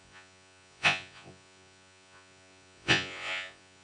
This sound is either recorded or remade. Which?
remade